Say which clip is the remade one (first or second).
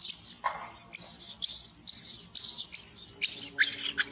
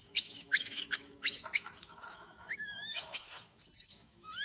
second